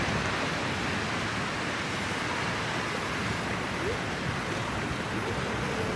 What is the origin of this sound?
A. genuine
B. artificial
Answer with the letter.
A